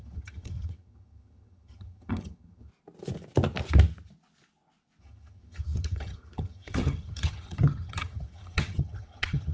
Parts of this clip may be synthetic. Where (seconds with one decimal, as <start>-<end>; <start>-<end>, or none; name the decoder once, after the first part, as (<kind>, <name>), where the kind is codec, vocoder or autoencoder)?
0.0-2.7 (vocoder, HiFi-GAN); 5.0-9.5